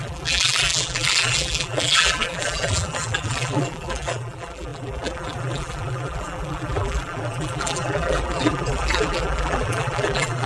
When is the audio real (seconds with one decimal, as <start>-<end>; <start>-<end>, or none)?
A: none